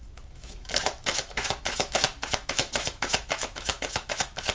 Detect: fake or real fake